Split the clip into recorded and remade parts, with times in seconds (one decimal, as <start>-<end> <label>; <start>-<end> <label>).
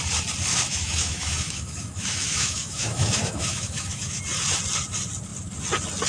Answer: 0.0-0.5 recorded; 0.5-4.2 remade; 4.2-6.1 recorded